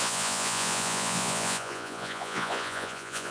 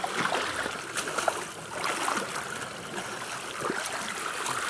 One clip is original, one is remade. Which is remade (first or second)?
first